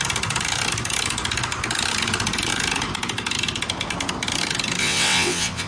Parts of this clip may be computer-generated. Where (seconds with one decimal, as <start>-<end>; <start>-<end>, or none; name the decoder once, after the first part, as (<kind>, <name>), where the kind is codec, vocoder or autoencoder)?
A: 4.8-5.7 (vocoder, WaveNeXt)